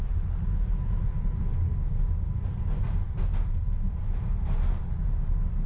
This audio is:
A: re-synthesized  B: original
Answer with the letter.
B